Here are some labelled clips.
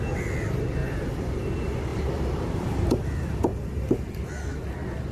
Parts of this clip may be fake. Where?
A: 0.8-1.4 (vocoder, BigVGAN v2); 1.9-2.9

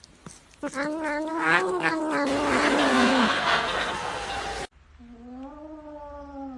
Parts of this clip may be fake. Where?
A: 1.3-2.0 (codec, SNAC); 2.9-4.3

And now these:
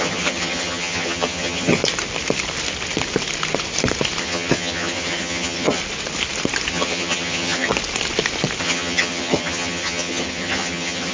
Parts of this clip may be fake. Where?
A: 0.0-1.8 (vocoder, HiFi-GAN); 4.2-5.8; 6.7-7.7; 8.6-11.1